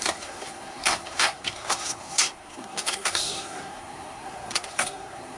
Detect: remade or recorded remade